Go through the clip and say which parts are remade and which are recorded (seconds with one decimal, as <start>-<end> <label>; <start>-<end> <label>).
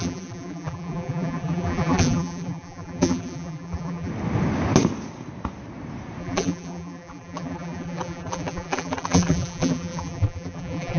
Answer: 0.0-4.1 remade; 4.1-6.2 recorded; 6.2-11.0 remade